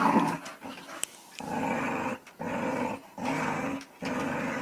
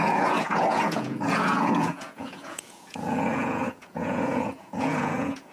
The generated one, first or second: second